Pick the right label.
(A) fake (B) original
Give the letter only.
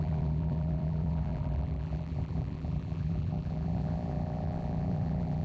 A